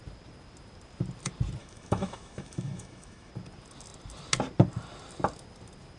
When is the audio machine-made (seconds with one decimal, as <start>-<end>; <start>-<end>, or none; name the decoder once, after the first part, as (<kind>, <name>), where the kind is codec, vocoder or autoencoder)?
1.6-3.3 (autoencoder, DAC-VAE)